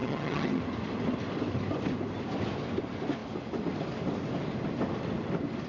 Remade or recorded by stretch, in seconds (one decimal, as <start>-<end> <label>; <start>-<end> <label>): 0.0-0.6 remade; 0.6-5.7 recorded